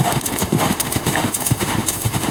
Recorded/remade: remade